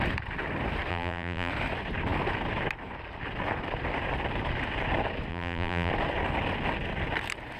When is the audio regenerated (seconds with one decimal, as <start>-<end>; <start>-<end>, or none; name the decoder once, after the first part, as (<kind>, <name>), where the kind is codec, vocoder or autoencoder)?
0.9-1.5 (vocoder, BigVGAN v2); 5.3-5.9